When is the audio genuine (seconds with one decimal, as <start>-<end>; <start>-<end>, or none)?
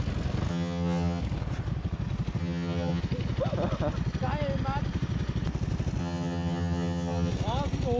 0.0-0.5; 1.2-2.4; 3.0-6.0; 7.3-8.0